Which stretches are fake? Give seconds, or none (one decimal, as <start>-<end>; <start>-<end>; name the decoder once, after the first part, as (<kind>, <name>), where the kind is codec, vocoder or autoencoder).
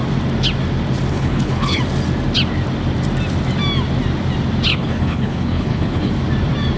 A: 1.1-1.8 (codec, HILCodec); 4.7-6.1